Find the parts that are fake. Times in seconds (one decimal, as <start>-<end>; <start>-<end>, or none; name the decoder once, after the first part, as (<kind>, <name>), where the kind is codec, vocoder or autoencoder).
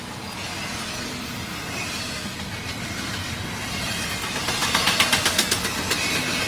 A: none